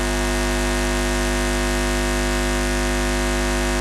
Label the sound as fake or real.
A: real